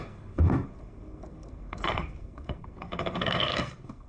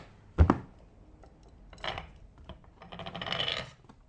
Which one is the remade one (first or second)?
first